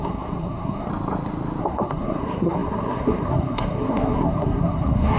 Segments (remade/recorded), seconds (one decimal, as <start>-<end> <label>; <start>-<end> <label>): 0.0-0.9 remade; 0.9-1.6 recorded; 1.6-5.2 remade